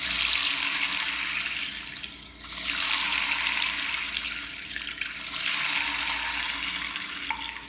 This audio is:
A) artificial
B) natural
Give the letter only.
B